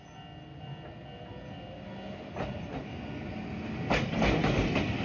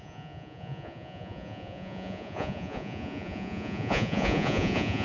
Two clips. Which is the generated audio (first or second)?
second